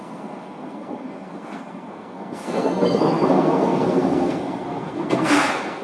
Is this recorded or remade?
remade